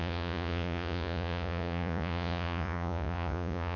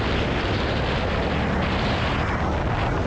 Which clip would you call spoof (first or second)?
first